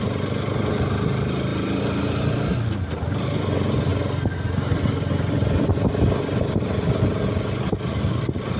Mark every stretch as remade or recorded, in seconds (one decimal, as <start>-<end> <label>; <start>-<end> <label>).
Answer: 0.0-8.6 recorded